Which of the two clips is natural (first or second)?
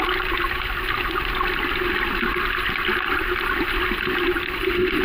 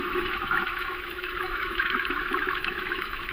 first